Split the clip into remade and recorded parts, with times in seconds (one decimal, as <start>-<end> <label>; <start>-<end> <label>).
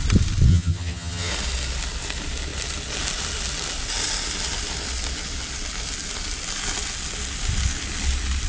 0.0-0.5 recorded; 0.5-1.3 remade; 1.3-8.5 recorded